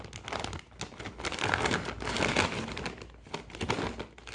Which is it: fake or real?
real